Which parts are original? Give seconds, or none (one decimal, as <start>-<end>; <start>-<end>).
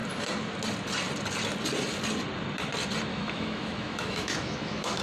0.0-3.1